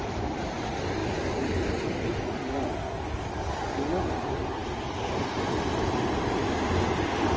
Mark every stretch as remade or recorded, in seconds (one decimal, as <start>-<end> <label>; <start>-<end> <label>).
0.0-1.0 recorded; 1.0-1.7 remade; 1.7-7.4 recorded